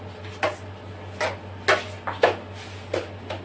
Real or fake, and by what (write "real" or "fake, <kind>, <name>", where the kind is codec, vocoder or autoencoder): real